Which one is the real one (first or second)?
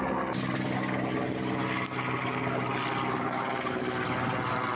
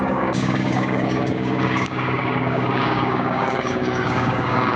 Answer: first